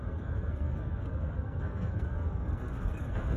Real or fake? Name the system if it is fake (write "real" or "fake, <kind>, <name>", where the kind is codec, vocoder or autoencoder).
fake, codec, SNAC